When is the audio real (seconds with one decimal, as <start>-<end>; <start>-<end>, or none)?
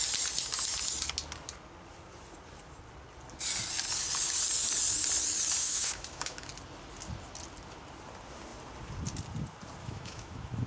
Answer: 0.0-5.6; 6.5-9.8